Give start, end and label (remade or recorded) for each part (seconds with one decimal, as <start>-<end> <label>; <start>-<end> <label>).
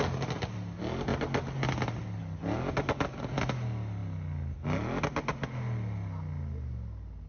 0.0-7.3 recorded